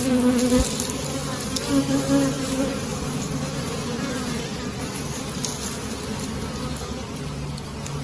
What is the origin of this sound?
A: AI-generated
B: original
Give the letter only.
B